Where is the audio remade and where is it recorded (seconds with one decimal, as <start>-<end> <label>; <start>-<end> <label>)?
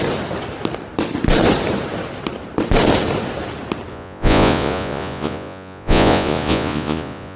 0.0-3.9 recorded; 3.9-7.4 remade